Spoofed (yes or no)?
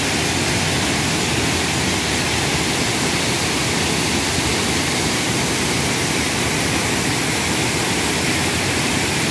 no